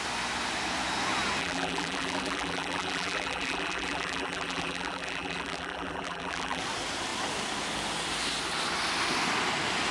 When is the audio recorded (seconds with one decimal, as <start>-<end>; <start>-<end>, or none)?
0.0-1.4; 6.6-9.9